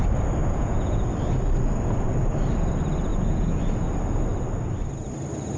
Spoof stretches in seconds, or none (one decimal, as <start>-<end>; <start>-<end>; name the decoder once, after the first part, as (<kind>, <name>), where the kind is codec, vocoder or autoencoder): 0.4-1.1 (vocoder, Vocos); 3.1-3.6